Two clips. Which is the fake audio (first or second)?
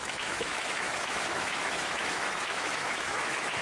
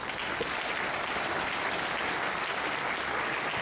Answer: first